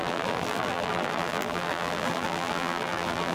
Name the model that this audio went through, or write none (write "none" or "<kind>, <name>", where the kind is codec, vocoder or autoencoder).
vocoder, BigVGAN v2